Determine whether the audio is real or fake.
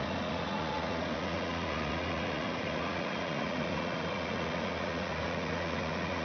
fake